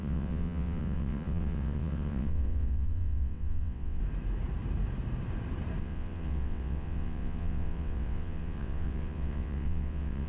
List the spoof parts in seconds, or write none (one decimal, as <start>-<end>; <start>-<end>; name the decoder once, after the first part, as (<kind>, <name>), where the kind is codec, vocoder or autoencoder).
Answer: 0.0-4.0 (vocoder, WaveNeXt); 5.8-10.3